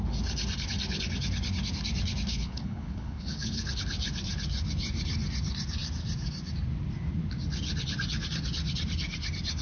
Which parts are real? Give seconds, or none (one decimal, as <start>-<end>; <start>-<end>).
0.0-2.3; 3.8-9.6